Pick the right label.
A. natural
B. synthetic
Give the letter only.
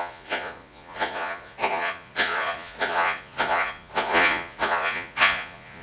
B